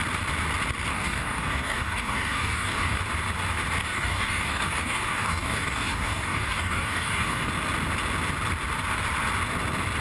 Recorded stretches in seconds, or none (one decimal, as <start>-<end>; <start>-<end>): 0.0-0.9; 3.0-3.8; 7.5-10.0